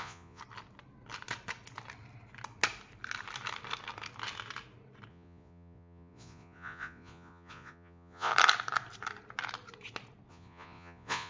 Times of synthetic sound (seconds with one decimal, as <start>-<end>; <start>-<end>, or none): 0.0-0.4; 5.1-8.3; 10.3-11.3